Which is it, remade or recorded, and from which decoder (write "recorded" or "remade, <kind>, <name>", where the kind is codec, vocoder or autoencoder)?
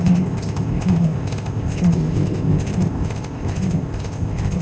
remade, codec, ZipCodec